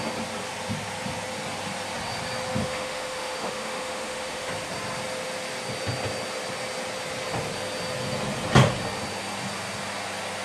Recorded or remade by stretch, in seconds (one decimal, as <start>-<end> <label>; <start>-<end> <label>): 0.0-2.6 recorded; 2.6-4.5 remade; 4.5-10.4 recorded